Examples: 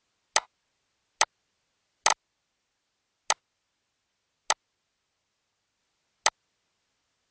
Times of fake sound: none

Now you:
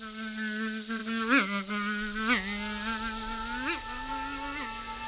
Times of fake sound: none

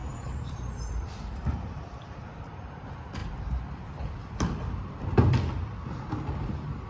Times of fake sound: 0.0-1.1 (vocoder, BigVGAN v2)

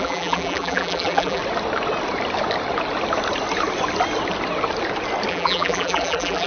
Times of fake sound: 0.0-1.4 (vocoder, BigVGAN v2); 5.3-6.5

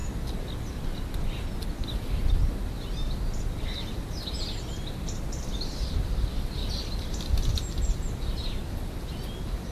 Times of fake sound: 6.6-7.6 (vocoder, BigVGAN v2)

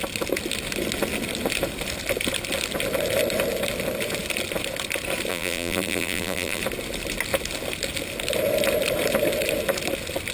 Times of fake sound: 5.3-6.6 (vocoder, BigVGAN v2)